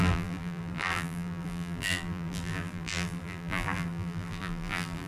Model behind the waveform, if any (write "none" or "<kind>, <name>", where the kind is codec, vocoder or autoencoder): vocoder, BigVGAN v2